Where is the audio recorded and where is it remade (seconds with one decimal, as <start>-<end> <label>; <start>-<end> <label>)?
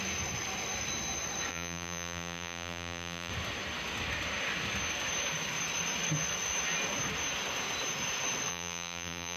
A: 0.0-1.5 recorded; 1.5-3.3 remade; 3.3-8.5 recorded; 8.5-9.4 remade